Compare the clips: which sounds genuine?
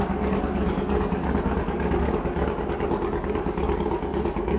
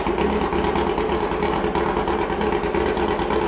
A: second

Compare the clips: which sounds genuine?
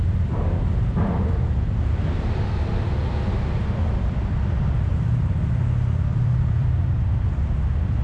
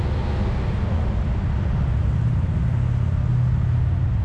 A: second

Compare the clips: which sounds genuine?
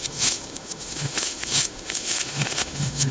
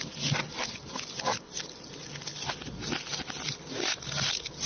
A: second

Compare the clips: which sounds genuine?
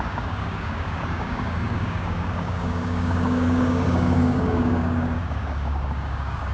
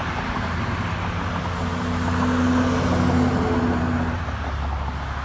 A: second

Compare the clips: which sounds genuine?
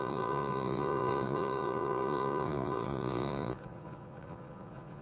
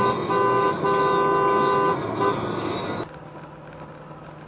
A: second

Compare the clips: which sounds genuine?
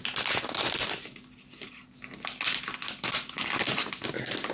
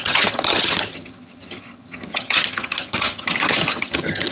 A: first